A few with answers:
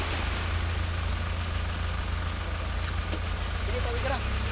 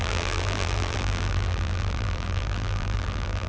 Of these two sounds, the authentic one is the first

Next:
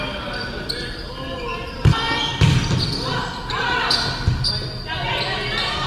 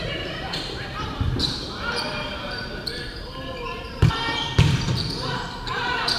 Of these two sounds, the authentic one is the first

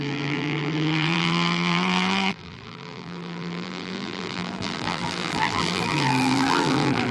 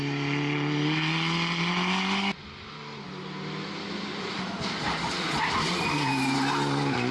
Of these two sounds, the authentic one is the second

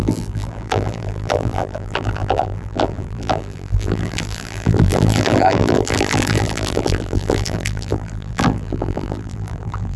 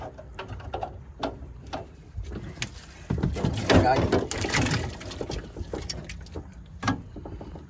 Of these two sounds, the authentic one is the second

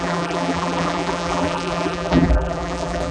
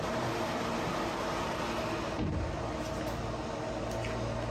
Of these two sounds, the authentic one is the second